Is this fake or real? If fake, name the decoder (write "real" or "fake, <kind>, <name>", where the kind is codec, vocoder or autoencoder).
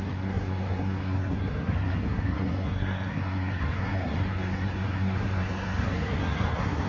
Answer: fake, codec, SNAC